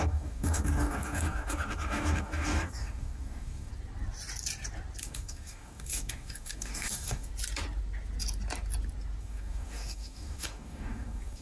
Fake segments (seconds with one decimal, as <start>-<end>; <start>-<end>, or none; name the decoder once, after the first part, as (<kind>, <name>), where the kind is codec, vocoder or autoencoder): 0.0-3.7 (codec, DAC); 5.0-7.3; 9.2-11.4